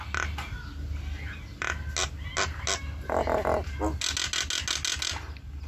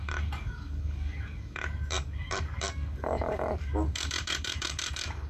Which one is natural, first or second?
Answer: first